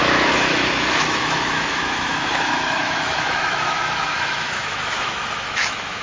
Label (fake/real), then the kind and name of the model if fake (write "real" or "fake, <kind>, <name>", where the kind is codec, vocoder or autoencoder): fake, autoencoder, DAC-VAE